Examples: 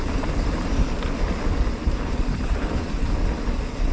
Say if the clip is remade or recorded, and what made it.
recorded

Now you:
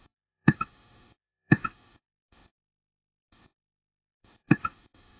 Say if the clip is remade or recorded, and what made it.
remade, autoencoder, DAC-VAE